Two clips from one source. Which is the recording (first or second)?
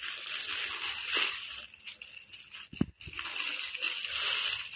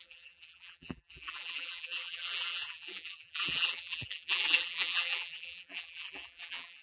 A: first